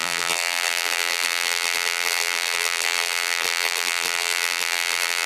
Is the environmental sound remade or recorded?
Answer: remade